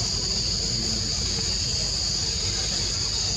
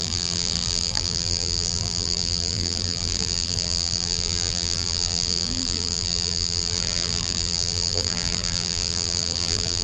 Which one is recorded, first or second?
first